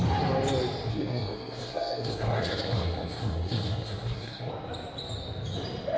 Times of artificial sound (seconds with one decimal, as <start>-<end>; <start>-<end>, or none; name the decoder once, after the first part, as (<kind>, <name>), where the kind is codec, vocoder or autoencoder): 0.9-4.5 (codec, SNAC)